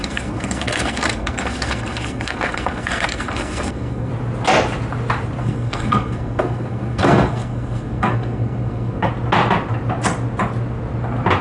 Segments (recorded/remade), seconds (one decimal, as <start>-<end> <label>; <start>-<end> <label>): 0.0-4.1 remade; 4.1-5.4 recorded; 5.4-9.1 remade; 9.1-11.4 recorded